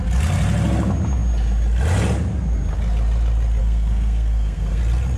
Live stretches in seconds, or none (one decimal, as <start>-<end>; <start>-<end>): 0.0-3.6; 4.8-5.2